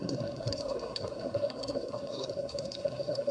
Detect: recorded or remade remade